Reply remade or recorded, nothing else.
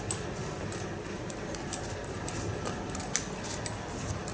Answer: recorded